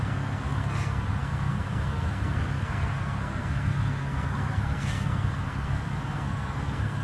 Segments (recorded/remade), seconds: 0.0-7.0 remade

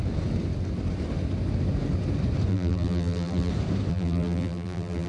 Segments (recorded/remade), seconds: 0.0-2.5 recorded; 2.5-3.5 remade; 3.5-3.9 recorded; 3.9-5.1 remade

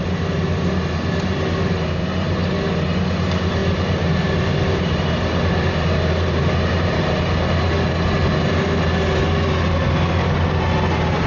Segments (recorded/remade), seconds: 0.0-3.6 recorded; 3.6-7.3 remade; 7.3-11.3 recorded